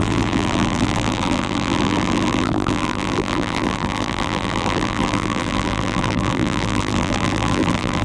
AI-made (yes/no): yes